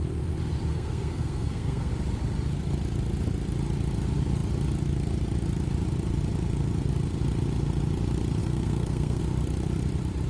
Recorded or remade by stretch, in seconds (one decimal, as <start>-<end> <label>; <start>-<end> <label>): 0.0-0.7 recorded; 0.7-1.9 remade; 1.9-8.4 recorded; 8.4-9.2 remade; 9.2-10.3 recorded